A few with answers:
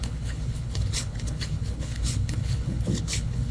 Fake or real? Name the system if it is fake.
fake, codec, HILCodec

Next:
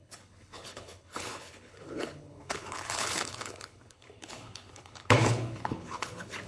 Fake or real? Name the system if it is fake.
fake, codec, HILCodec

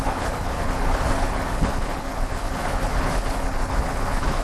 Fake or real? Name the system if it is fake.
fake, codec, HILCodec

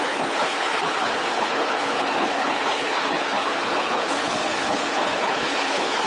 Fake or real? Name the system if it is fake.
fake, codec, HILCodec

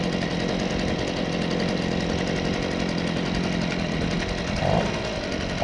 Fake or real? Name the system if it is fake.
real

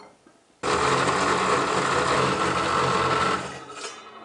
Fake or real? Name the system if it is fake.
real